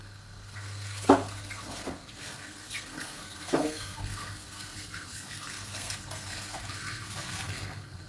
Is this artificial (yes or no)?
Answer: yes